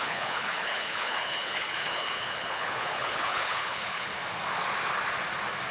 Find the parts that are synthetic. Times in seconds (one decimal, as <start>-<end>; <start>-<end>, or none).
0.0-4.1